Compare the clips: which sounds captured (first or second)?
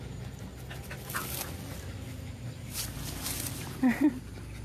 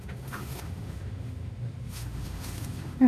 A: first